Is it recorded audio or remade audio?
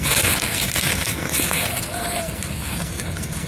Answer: remade